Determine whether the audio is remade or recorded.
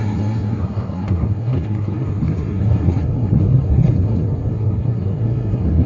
remade